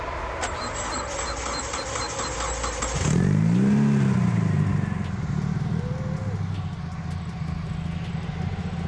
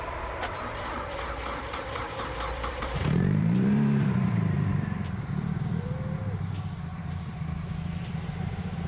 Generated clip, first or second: second